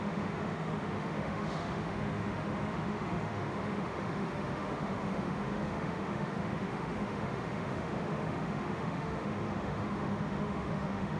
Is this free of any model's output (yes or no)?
no